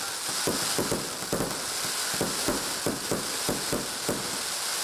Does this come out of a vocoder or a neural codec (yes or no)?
no